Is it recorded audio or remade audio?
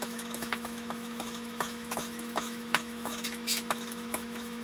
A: remade